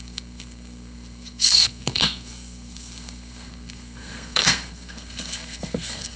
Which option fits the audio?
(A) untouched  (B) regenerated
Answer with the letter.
B